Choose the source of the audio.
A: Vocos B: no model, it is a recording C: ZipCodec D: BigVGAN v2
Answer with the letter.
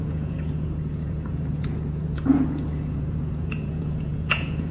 A